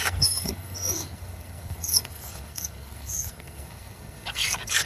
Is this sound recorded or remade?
remade